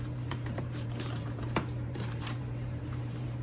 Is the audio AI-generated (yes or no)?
yes